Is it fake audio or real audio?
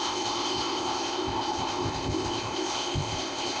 fake